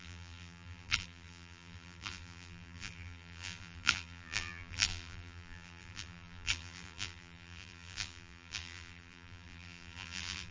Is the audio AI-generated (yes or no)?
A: yes